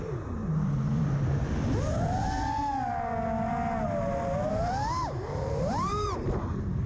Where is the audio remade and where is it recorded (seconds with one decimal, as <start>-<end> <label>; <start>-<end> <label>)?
0.0-0.4 remade; 0.4-4.5 recorded; 4.5-6.9 remade